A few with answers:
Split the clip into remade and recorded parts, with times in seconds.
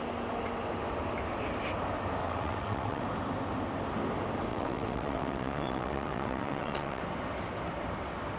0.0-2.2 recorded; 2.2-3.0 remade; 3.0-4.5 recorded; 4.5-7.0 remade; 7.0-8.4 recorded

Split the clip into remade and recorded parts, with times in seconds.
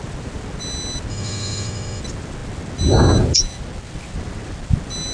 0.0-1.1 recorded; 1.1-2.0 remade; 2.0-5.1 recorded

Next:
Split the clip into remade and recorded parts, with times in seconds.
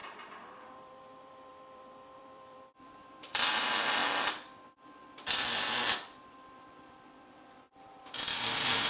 0.0-0.6 recorded; 0.6-4.0 remade; 4.0-5.3 recorded; 5.3-8.9 remade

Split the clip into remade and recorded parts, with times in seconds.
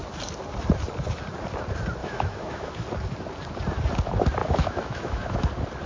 0.0-2.0 recorded; 2.0-2.8 remade; 2.8-4.4 recorded; 4.4-5.5 remade; 5.5-5.9 recorded